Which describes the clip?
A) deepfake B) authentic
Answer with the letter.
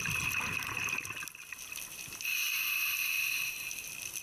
B